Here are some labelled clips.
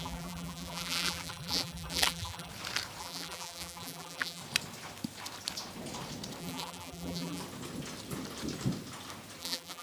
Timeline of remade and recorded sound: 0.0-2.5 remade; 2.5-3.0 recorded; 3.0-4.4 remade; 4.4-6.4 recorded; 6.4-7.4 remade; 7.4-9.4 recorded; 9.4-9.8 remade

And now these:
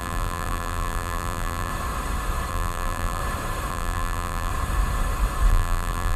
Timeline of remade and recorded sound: 0.0-1.7 remade; 1.7-2.5 recorded; 2.5-3.2 remade; 3.2-3.7 recorded; 3.7-4.5 remade; 4.5-5.5 recorded; 5.5-6.2 remade